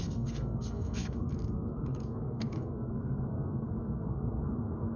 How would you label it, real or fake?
fake